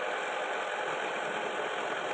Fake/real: real